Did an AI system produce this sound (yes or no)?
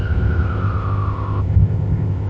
yes